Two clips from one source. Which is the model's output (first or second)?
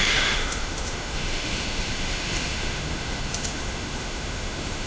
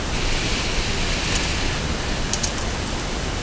first